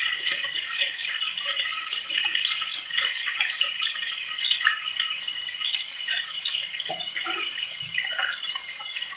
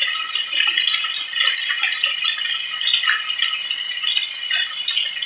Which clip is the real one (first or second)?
second